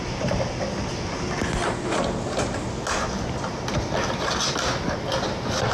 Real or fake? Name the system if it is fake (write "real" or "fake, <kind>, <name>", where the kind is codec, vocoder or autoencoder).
real